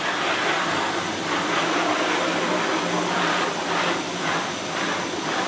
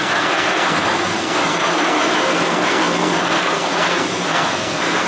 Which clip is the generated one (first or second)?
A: second